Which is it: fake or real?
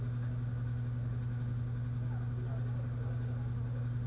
real